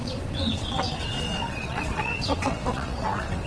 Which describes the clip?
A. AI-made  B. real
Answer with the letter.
A